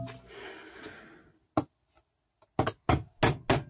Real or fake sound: real